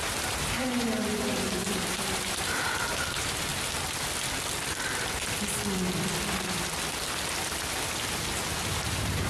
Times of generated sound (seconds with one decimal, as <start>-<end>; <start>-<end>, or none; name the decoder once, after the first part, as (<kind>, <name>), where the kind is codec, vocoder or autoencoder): 0.0-3.5 (vocoder, BigVGAN v2); 8.7-9.3